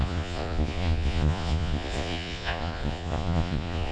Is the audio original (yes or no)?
no